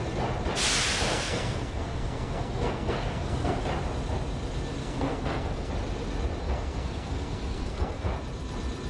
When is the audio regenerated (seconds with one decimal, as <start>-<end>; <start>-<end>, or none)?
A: 1.1-3.6; 4.8-5.7; 6.4-8.1